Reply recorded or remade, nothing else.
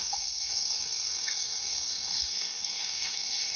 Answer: remade